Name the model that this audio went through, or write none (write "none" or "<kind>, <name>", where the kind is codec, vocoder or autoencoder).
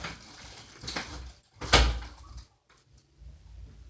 none